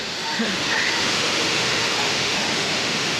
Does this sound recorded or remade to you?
remade